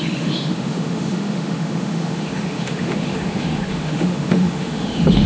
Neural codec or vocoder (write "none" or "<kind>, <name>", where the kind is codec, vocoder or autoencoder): autoencoder, DAC-VAE